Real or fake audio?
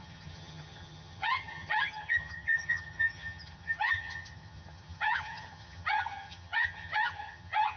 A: fake